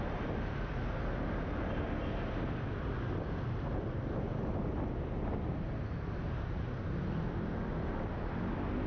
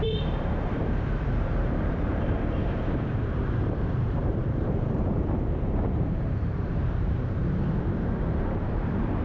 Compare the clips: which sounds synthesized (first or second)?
second